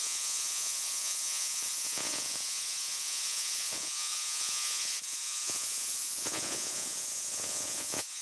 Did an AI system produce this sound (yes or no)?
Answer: yes